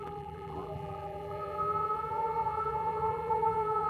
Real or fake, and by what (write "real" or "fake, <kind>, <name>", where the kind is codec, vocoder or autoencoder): fake, vocoder, BigVGAN v2